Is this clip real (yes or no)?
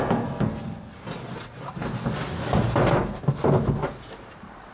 yes